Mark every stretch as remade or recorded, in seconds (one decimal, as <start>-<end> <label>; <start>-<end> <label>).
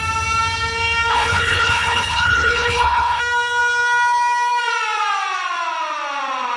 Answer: 0.0-1.1 recorded; 1.1-3.2 remade; 3.2-6.6 recorded